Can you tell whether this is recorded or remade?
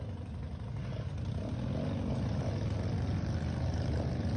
recorded